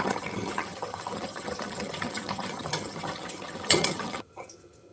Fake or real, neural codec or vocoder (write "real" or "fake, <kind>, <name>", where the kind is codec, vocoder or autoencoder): fake, vocoder, HiFi-GAN